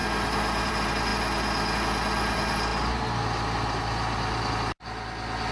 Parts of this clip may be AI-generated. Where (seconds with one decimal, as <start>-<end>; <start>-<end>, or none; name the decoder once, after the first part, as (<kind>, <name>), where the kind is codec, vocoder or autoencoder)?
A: none